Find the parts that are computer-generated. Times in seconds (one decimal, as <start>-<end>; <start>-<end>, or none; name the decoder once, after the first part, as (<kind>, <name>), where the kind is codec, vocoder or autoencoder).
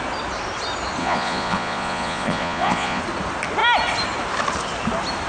1.0-3.0 (vocoder, Vocos)